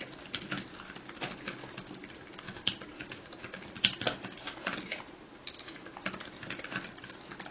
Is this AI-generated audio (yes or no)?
no